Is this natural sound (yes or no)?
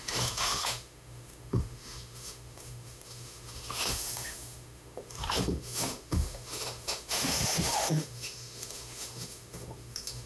no